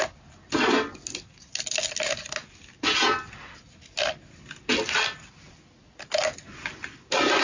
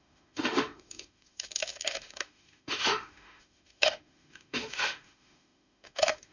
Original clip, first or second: first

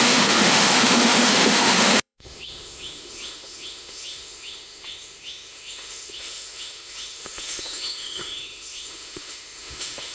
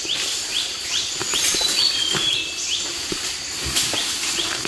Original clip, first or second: second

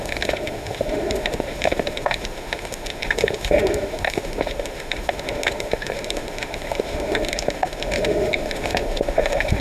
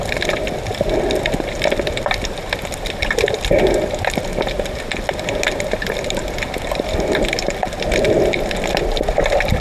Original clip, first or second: second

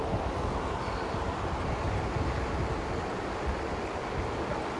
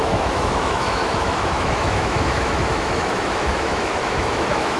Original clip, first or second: first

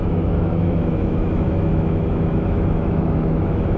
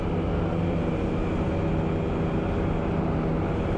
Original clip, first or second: second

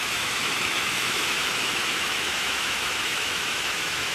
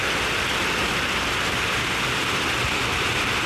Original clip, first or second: second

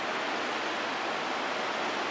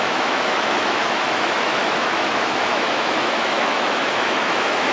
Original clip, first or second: first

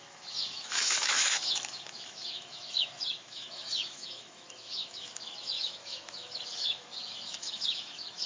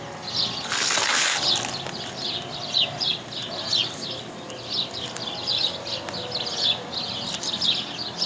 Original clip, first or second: second